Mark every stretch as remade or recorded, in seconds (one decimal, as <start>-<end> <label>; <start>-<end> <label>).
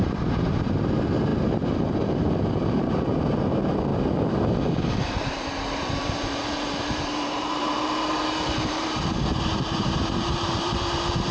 0.0-1.3 remade; 1.3-1.9 recorded; 1.9-3.9 remade; 3.9-4.6 recorded; 4.6-11.3 remade